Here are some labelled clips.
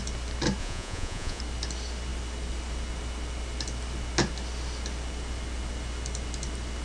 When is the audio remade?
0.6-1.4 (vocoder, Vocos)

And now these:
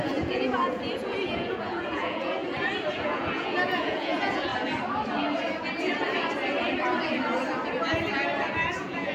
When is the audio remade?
0.0-2.4 (vocoder, Vocos); 2.9-4.5; 8.7-9.1

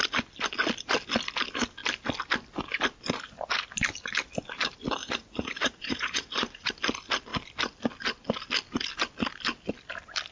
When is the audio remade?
5.0-6.7 (vocoder, Vocos)

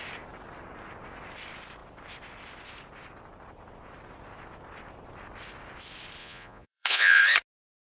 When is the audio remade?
6.2-7.2 (vocoder, Vocos)

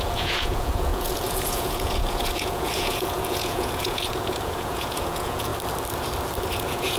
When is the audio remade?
0.0-5.5 (vocoder, Vocos); 6.5-7.0

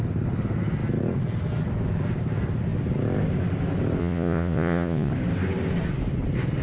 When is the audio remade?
4.0-5.1 (vocoder, Vocos)